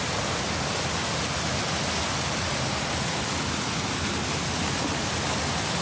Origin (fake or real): real